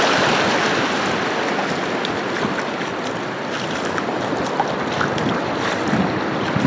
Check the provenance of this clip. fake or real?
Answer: real